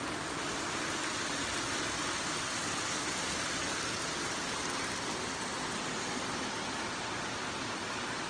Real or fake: real